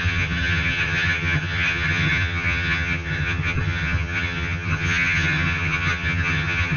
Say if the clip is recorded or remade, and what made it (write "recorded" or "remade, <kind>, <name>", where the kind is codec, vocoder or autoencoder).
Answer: remade, vocoder, HiFi-GAN